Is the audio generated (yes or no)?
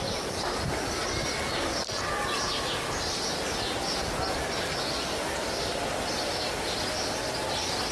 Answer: no